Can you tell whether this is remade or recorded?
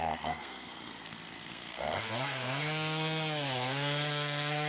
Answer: remade